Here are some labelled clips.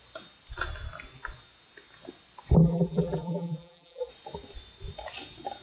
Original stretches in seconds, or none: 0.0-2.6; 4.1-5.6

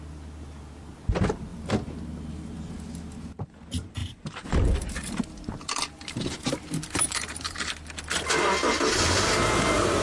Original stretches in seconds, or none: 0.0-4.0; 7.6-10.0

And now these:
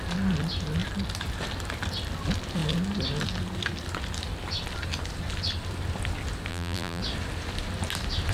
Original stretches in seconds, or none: 0.0-6.5; 7.0-8.3